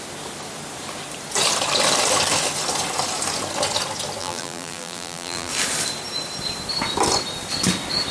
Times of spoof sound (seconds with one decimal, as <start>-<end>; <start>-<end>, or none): 4.2-5.5

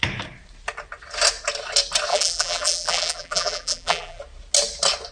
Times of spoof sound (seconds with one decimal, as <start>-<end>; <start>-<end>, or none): 2.1-4.2